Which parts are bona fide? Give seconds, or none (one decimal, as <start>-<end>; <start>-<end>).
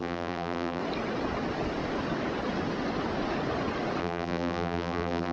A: 0.8-4.0